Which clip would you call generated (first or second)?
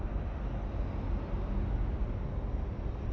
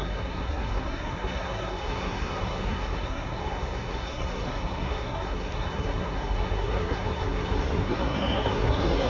second